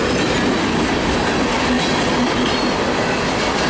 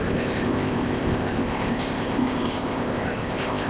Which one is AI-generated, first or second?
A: second